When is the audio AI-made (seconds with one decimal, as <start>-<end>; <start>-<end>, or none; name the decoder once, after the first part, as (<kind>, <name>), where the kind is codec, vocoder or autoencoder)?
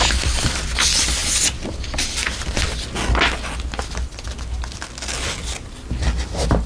none